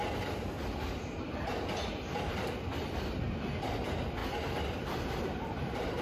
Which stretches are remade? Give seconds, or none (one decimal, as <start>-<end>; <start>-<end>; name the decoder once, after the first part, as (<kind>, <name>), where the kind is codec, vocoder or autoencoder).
none